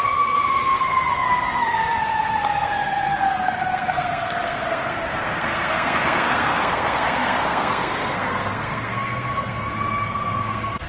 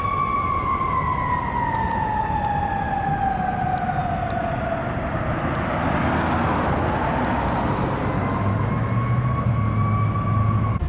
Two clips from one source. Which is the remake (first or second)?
first